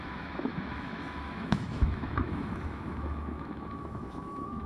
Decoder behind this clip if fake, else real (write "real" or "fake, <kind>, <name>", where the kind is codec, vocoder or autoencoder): fake, autoencoder, DAC-VAE